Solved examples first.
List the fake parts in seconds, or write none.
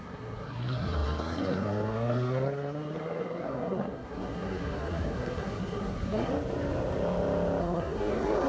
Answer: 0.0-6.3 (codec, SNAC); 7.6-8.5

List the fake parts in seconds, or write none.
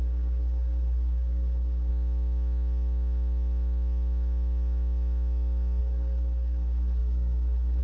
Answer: 0.0-1.9 (codec, SNAC); 5.8-7.8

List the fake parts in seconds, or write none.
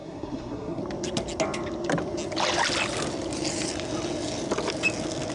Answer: 0.0-0.8 (codec, SNAC)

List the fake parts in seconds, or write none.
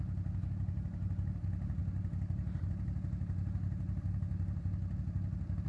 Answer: none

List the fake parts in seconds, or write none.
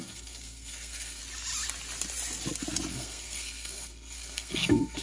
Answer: 0.0-1.2 (codec, SNAC); 2.9-5.0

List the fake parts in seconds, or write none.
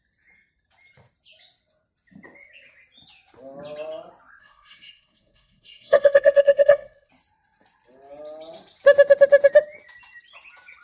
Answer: 4.4-7.1 (codec, SNAC)